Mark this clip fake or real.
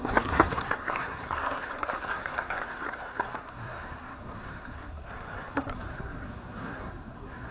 fake